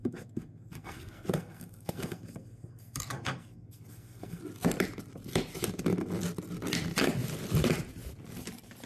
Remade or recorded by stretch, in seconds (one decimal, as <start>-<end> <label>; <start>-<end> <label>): 0.0-4.4 remade; 4.4-8.9 recorded